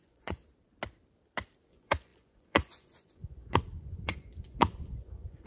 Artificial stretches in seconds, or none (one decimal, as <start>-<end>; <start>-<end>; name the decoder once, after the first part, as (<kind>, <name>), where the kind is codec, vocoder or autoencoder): 0.0-0.4 (vocoder, Vocos); 1.7-5.5